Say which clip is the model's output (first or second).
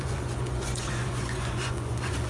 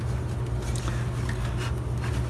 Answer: first